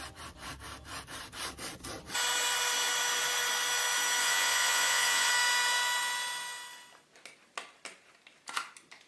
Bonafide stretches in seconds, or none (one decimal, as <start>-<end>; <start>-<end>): 0.0-4.2; 5.3-9.1